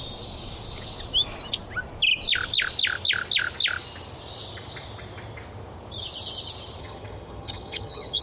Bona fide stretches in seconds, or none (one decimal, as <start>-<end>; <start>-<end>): 0.0-6.8